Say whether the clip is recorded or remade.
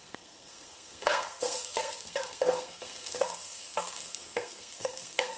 remade